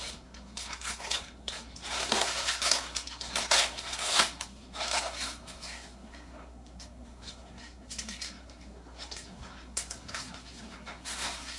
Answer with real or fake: fake